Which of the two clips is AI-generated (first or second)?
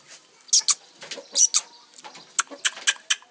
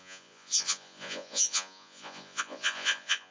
second